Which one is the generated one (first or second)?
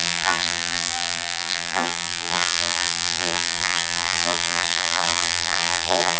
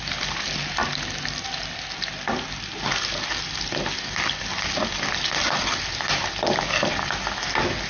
first